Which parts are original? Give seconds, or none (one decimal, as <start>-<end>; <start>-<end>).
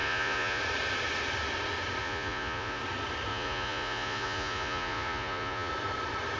0.6-2.0; 2.8-3.3; 5.7-6.4